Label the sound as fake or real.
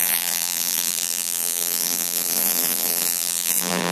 fake